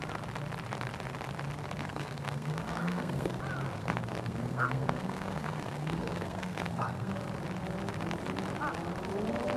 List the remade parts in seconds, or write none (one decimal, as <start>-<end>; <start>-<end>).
1.8-3.4; 3.8-7.1

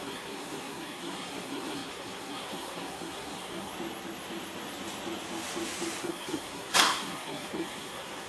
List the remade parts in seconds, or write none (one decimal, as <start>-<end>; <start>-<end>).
0.0-3.7; 6.0-8.3